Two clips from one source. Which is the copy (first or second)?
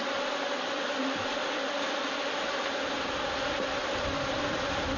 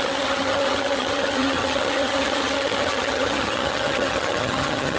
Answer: second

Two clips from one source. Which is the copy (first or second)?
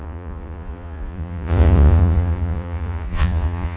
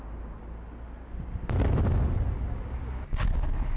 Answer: first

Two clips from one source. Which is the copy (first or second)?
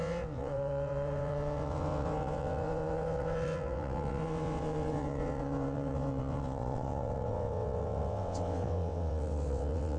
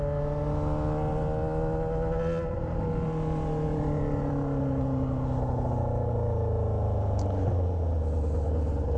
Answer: first